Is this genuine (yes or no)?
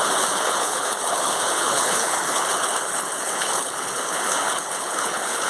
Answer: no